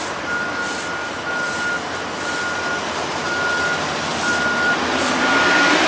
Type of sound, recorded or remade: remade